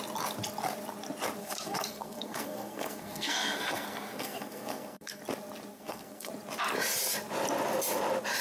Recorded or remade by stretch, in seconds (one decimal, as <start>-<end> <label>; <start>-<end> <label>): 0.0-1.4 recorded; 1.4-5.2 remade; 5.2-5.7 recorded; 5.7-6.3 remade; 6.3-8.4 recorded